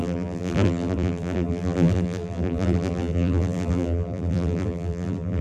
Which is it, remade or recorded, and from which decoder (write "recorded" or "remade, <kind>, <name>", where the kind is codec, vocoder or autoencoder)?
remade, vocoder, BigVGAN v2